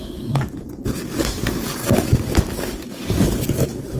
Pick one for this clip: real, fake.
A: fake